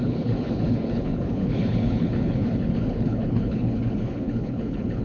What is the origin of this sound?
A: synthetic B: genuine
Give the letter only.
A